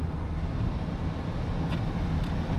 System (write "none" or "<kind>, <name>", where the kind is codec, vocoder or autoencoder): none